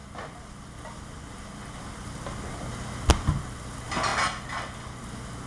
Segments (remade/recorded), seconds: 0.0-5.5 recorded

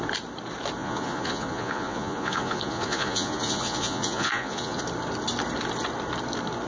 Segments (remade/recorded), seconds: 0.0-0.8 recorded; 0.8-4.8 remade; 4.8-6.7 recorded

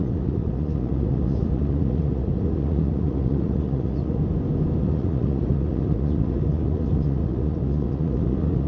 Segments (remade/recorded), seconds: 0.0-4.2 remade; 4.2-4.8 recorded; 4.8-8.7 remade

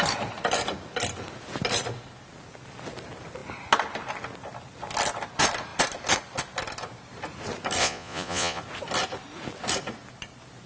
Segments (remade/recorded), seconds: 0.0-7.8 recorded; 7.8-8.6 remade; 8.6-10.7 recorded

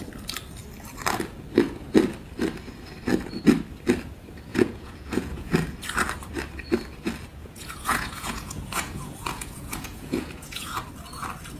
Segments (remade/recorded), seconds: 0.0-4.5 recorded; 4.5-5.5 remade; 5.5-7.3 recorded; 7.3-10.8 remade; 10.8-11.6 recorded

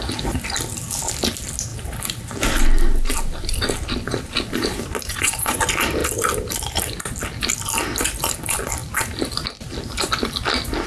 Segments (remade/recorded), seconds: 0.0-5.1 recorded; 5.1-5.6 remade; 5.6-10.9 recorded

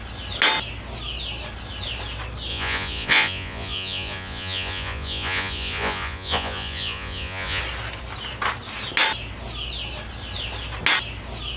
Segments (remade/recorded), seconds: 0.0-2.5 recorded; 2.5-7.6 remade; 7.6-11.6 recorded

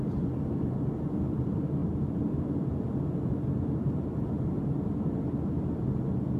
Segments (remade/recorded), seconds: 0.0-6.4 recorded